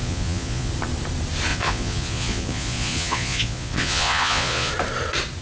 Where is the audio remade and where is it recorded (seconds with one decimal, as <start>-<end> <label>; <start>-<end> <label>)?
0.0-0.7 remade; 0.7-1.5 recorded; 1.5-4.7 remade; 4.7-5.4 recorded